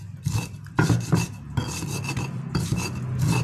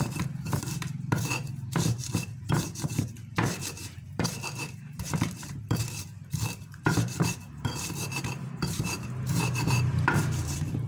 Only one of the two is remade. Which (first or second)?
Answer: second